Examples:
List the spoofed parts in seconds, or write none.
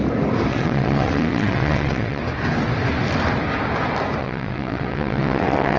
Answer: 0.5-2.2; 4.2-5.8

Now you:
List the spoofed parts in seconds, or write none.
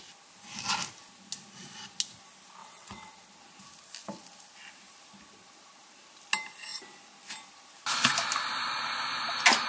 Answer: 2.6-3.1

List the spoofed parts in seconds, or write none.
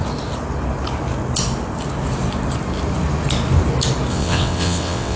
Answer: 4.1-5.2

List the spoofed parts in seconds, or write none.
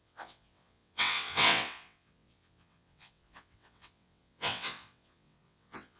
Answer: 0.0-6.0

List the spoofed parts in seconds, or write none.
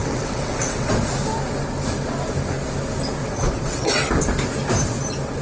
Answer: 0.0-0.9; 3.2-4.0